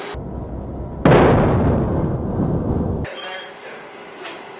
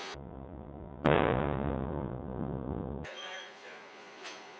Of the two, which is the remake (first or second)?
second